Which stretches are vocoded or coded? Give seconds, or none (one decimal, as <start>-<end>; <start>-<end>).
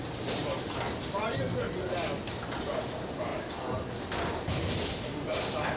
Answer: none